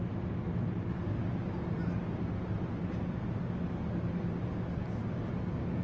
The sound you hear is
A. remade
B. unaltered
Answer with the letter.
B